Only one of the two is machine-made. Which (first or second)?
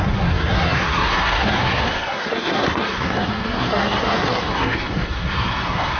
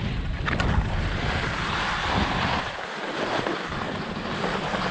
first